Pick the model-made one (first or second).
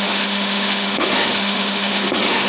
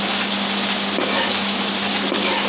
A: first